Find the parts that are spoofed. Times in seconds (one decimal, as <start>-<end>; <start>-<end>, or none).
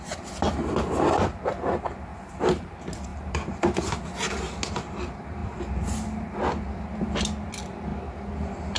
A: 2.1-2.7; 3.1-3.8